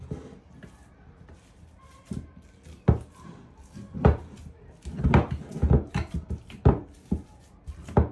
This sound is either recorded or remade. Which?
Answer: recorded